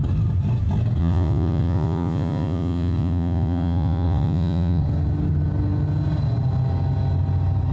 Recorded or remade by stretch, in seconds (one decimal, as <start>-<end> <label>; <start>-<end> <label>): 0.0-1.0 recorded; 1.0-4.8 remade; 4.8-7.7 recorded